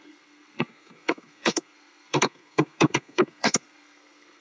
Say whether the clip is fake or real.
fake